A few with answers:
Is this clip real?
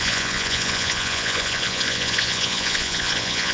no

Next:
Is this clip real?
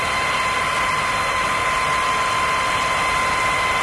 yes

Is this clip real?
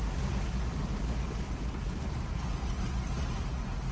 yes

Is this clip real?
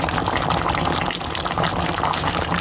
yes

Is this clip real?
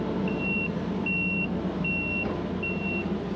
yes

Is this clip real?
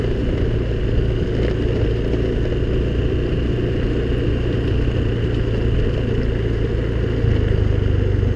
yes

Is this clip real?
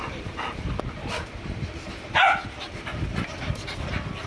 yes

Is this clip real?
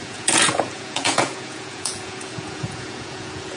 no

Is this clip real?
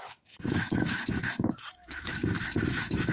no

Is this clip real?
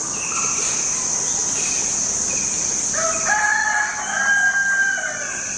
yes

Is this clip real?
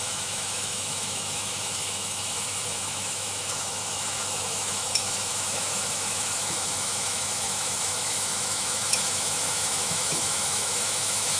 no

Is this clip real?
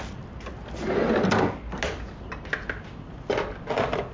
yes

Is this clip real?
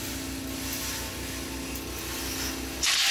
yes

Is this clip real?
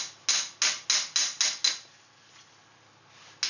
yes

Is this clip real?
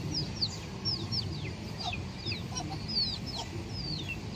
yes